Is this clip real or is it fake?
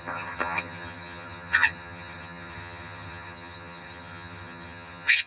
fake